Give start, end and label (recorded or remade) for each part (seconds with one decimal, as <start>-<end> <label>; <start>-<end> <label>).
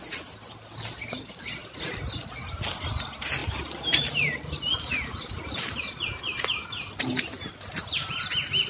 0.0-8.7 recorded